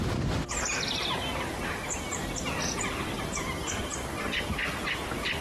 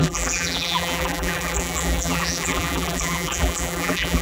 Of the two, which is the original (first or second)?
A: first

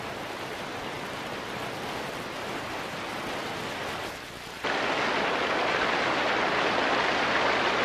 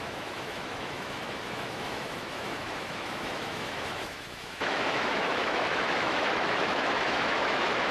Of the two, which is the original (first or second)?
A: first